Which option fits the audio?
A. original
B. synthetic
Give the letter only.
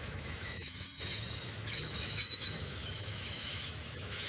B